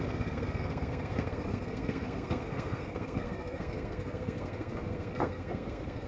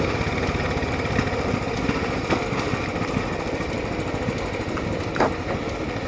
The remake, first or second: first